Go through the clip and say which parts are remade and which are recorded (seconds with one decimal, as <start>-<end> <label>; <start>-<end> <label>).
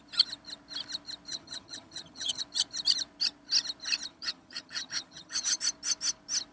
0.0-1.3 recorded; 1.3-2.4 remade; 2.4-4.1 recorded; 4.1-5.6 remade; 5.6-6.5 recorded